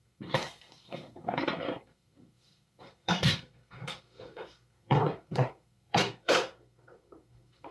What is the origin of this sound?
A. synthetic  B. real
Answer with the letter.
A